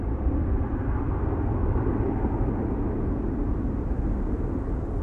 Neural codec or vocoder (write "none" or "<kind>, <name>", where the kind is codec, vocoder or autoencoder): none